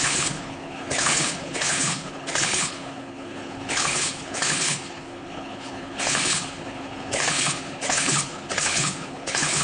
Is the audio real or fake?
fake